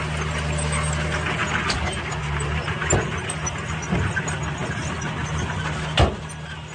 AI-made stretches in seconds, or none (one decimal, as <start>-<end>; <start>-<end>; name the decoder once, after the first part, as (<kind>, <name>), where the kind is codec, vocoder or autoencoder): none